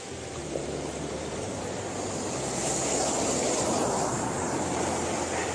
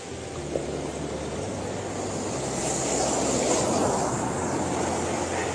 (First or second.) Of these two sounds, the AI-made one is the first